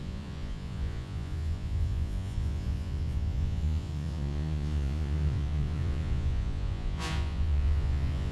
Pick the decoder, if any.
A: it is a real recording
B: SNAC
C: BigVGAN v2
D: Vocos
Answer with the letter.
D